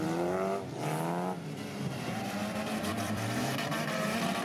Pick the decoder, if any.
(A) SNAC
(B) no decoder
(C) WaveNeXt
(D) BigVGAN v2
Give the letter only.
D